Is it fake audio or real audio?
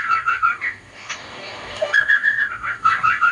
fake